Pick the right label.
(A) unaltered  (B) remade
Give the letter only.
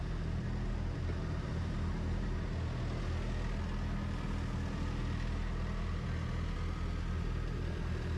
A